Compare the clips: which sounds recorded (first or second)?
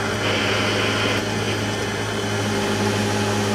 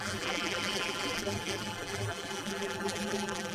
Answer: first